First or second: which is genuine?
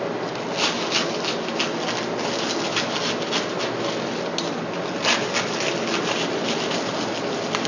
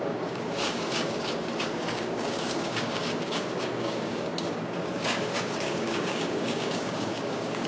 first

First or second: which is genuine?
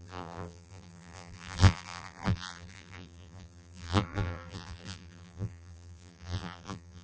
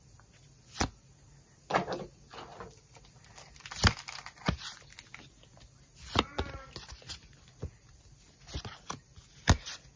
second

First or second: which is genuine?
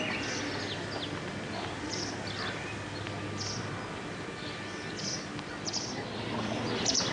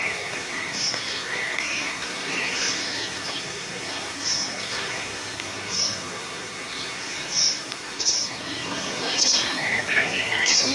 first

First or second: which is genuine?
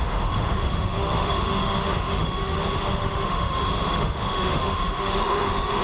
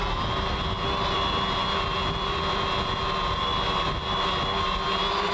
second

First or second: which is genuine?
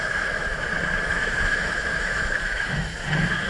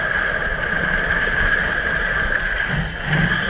second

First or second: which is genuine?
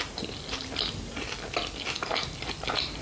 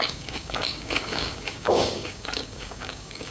first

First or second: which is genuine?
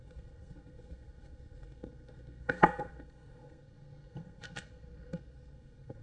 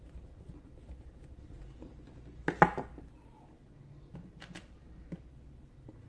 second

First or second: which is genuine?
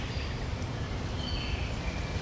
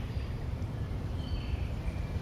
first